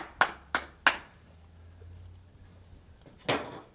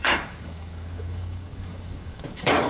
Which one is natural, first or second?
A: first